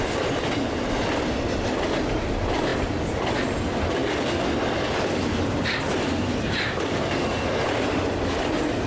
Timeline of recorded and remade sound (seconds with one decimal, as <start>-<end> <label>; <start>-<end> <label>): 0.0-8.9 recorded

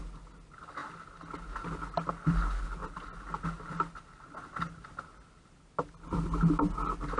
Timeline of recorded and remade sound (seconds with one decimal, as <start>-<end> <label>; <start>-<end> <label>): 0.0-7.2 recorded